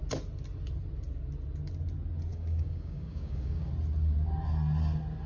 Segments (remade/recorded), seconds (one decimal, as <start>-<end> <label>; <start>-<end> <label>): 0.0-2.3 recorded; 2.3-3.7 remade; 3.7-5.3 recorded

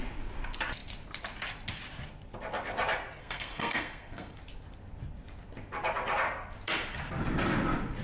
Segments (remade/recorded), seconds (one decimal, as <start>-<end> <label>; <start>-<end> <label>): 0.0-3.2 recorded; 3.2-4.4 remade; 4.4-8.0 recorded

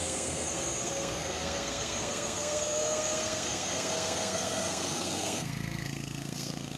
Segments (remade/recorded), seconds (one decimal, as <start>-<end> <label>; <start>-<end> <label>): 0.0-6.8 remade

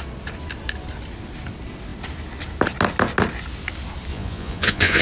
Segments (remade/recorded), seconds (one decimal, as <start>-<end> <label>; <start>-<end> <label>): 0.0-4.1 recorded; 4.1-5.0 remade

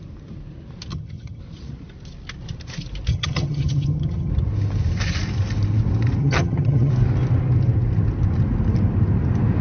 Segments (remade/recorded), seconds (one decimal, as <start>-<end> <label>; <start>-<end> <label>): 0.0-0.9 recorded; 0.9-1.4 remade; 1.4-3.1 recorded; 3.1-4.3 remade; 4.3-6.2 recorded; 6.2-6.9 remade; 6.9-9.6 recorded

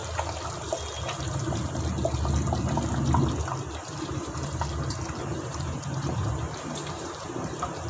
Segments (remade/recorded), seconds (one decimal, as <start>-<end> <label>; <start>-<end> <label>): 0.0-3.9 recorded; 3.9-7.9 remade

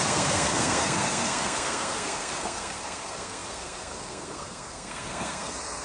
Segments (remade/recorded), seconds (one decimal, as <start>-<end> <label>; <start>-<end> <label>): 0.0-5.8 remade